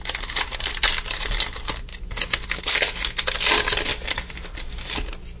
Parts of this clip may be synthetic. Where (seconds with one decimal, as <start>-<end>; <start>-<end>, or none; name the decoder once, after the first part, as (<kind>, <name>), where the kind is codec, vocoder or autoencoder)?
none